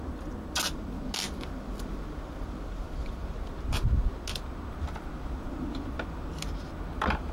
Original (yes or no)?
yes